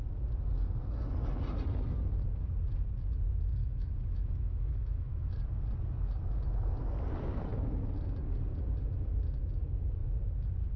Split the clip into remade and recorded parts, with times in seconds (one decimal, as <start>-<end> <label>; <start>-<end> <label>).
0.0-3.6 recorded; 3.6-5.3 remade; 5.3-10.8 recorded